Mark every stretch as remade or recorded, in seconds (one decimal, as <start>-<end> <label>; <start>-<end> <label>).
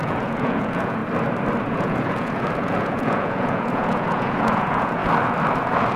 0.0-1.0 remade; 1.0-1.6 recorded; 1.6-5.0 remade; 5.0-6.0 recorded